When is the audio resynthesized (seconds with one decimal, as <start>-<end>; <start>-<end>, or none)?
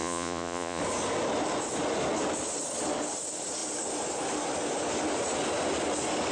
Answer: 0.0-0.8